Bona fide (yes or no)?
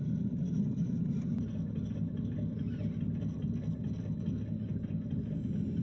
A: yes